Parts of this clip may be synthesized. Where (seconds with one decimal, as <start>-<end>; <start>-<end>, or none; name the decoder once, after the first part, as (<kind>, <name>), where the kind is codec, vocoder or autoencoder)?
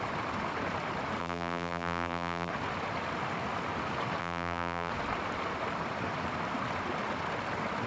1.2-2.5 (vocoder, BigVGAN v2); 4.2-4.9